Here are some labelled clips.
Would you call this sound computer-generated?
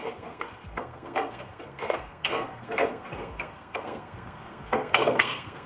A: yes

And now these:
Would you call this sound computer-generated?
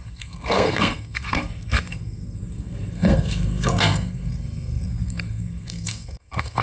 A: yes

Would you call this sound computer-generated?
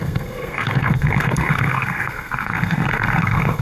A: yes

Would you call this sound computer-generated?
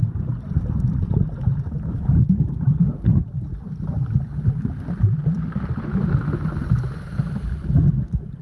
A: no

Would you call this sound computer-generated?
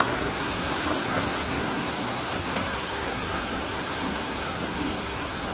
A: yes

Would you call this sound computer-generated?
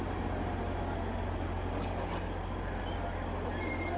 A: no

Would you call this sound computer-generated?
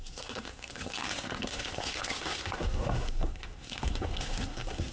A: yes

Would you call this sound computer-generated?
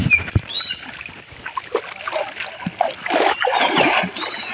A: no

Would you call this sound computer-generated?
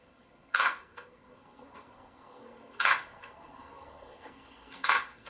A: yes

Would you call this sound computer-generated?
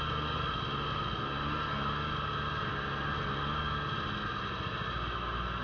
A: no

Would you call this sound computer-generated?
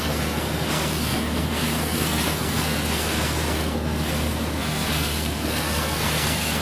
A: yes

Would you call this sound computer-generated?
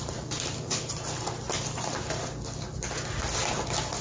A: no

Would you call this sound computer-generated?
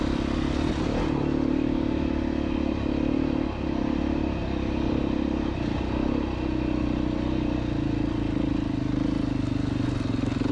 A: no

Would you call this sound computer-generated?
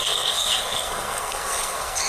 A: yes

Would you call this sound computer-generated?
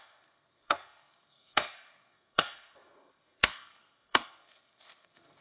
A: yes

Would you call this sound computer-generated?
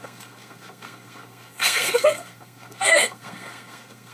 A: yes